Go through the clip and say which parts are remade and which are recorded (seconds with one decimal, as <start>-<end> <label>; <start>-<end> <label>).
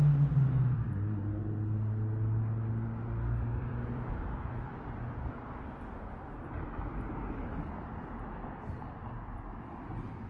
0.0-3.5 recorded; 3.5-6.1 remade; 6.1-10.3 recorded